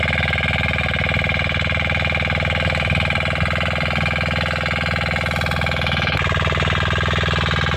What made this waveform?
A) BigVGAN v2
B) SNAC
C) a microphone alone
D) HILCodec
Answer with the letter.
C